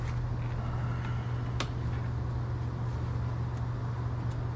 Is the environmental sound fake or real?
real